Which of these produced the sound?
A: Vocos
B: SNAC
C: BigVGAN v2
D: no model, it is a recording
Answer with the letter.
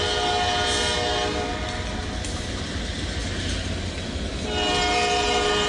D